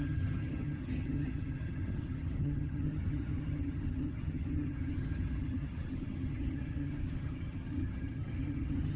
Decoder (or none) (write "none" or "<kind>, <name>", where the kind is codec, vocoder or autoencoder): vocoder, HiFi-GAN